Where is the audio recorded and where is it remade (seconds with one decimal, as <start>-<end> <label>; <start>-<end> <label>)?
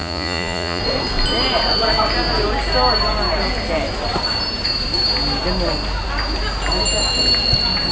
0.0-0.8 remade; 0.8-7.9 recorded